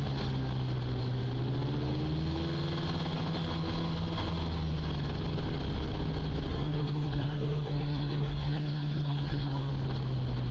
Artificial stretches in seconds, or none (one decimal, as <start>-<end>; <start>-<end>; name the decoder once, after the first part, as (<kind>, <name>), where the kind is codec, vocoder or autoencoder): 6.5-9.7 (codec, SNAC)